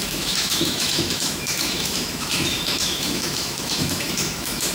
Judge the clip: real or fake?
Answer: fake